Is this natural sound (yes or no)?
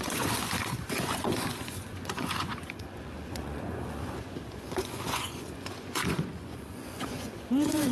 no